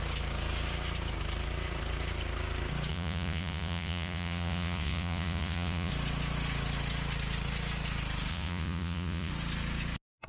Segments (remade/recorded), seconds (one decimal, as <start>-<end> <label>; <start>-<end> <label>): 0.0-2.9 recorded; 2.9-5.9 remade; 5.9-8.3 recorded; 8.3-9.3 remade; 9.3-10.3 recorded

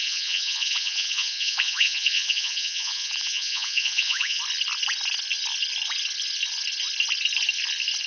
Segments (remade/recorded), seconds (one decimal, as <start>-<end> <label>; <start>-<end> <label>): 0.0-4.4 remade; 4.4-8.1 recorded